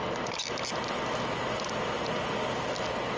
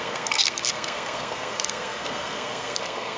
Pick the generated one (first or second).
second